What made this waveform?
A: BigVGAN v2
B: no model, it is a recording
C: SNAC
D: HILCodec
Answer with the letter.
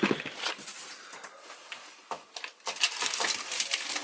B